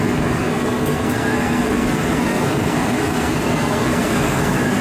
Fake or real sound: fake